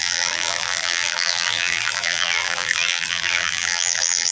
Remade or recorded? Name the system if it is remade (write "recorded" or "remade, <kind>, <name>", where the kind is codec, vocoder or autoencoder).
remade, vocoder, BigVGAN v2